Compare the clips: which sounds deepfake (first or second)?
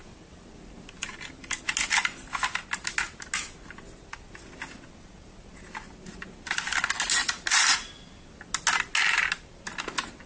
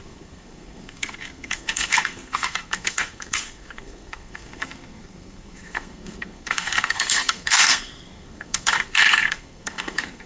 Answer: second